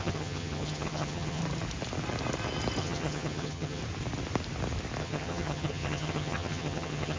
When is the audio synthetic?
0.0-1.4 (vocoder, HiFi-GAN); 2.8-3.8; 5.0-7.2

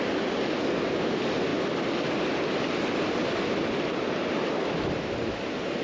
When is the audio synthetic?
none

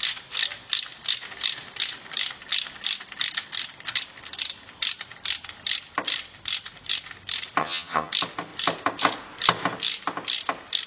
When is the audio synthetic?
7.6-8.1 (vocoder, HiFi-GAN)